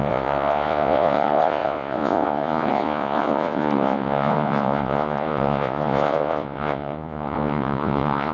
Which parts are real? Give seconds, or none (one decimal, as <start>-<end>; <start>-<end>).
none